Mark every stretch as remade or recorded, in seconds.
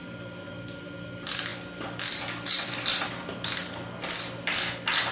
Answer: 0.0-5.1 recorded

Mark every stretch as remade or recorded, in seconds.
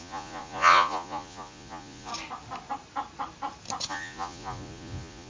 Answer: 0.0-2.1 remade; 2.1-3.9 recorded; 3.9-5.3 remade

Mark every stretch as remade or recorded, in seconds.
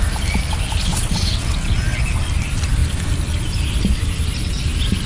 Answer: 0.0-0.9 recorded; 0.9-2.0 remade; 2.0-5.1 recorded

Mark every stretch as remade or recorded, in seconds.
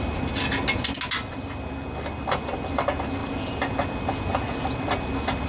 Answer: 0.0-5.5 recorded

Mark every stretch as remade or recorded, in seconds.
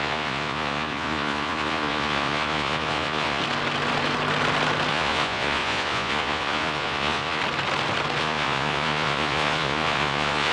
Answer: 0.0-3.4 remade; 3.4-4.9 recorded; 4.9-7.4 remade; 7.4-8.2 recorded; 8.2-10.5 remade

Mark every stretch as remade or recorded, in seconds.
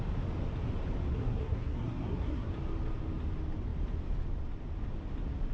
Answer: 0.0-1.1 recorded; 1.1-2.5 remade; 2.5-5.5 recorded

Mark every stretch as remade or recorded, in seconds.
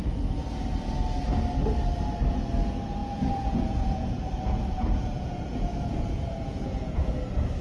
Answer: 0.0-3.0 recorded; 3.0-7.1 remade; 7.1-7.6 recorded